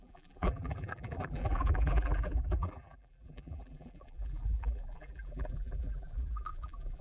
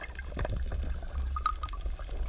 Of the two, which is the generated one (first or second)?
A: first